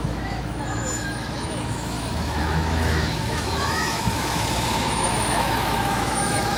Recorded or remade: remade